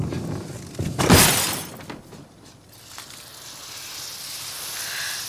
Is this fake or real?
real